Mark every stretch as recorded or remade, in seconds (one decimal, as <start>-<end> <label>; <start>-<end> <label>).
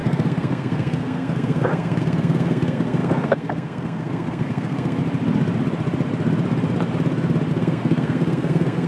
0.0-5.0 remade; 5.0-7.5 recorded; 7.5-8.9 remade